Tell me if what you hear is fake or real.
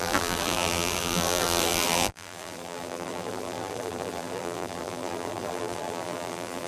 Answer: fake